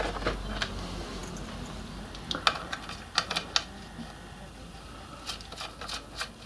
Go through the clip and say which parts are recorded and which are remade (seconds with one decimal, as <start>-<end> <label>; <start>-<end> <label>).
0.0-6.5 recorded